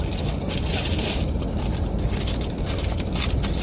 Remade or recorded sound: recorded